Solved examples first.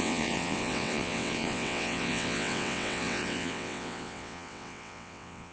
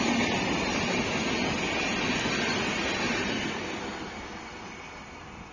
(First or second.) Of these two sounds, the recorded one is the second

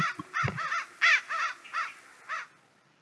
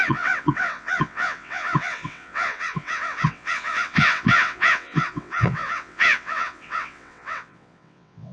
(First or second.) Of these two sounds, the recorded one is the first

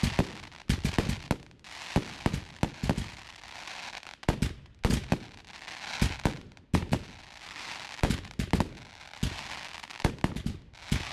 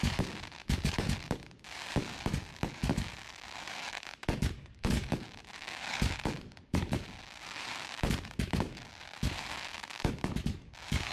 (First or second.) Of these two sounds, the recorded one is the first